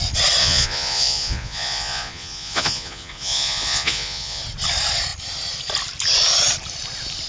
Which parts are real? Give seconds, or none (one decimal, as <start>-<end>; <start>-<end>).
0.0-0.4; 4.4-7.3